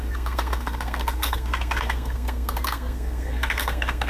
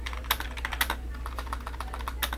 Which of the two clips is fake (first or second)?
first